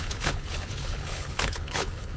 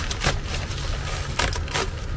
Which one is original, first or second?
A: second